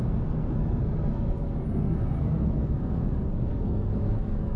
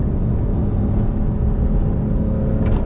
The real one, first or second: second